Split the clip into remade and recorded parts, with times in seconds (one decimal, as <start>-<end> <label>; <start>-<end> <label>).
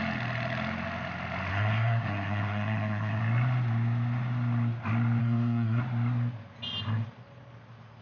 0.0-1.5 recorded; 1.5-3.2 remade; 3.2-5.2 recorded; 5.2-5.8 remade; 5.8-8.0 recorded